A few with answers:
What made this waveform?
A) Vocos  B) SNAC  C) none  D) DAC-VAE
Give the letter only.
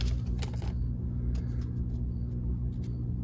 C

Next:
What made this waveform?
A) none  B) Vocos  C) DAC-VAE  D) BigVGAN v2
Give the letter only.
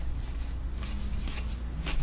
A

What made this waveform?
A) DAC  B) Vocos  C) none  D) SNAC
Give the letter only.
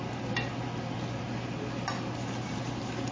C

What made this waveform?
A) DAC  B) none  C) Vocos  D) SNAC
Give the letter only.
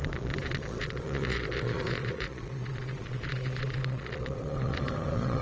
C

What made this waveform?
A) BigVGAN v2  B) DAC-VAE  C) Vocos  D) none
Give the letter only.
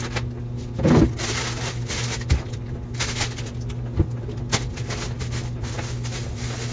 D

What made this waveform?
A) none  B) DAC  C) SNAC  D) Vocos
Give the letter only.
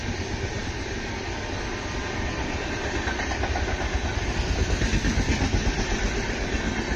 A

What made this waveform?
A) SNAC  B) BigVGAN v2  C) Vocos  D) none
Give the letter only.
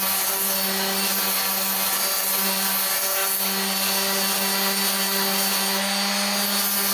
D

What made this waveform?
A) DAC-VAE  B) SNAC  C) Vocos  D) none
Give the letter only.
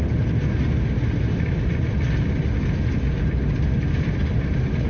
D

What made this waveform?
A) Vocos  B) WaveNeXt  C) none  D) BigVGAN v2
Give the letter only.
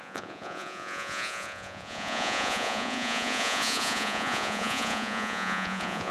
A